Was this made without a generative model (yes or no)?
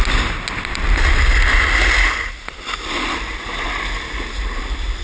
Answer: yes